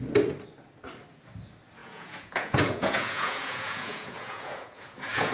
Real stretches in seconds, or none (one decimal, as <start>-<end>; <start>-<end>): 0.0-1.8